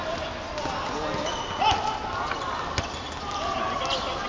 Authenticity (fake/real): real